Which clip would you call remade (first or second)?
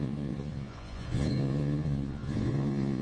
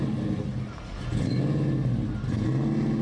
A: first